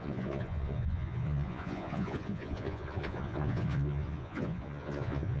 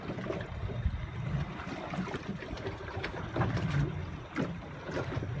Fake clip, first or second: first